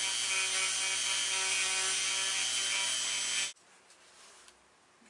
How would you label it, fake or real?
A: real